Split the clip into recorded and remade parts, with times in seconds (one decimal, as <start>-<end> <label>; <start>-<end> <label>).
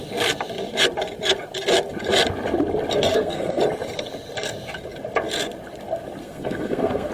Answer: 0.0-3.1 recorded; 3.1-3.6 remade; 3.6-6.2 recorded; 6.2-7.1 remade